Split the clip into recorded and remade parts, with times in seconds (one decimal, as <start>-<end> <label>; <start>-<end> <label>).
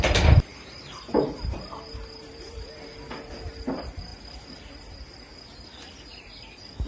0.0-0.5 recorded; 0.5-2.7 remade; 2.7-6.9 recorded